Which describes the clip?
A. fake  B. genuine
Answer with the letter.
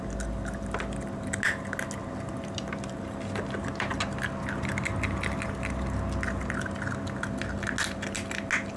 B